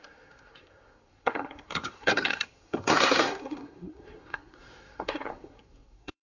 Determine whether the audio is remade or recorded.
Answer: remade